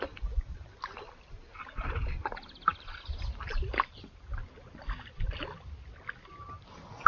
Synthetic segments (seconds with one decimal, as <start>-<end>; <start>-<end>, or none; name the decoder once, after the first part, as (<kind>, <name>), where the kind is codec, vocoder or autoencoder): none